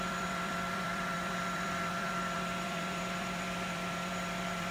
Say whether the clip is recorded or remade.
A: remade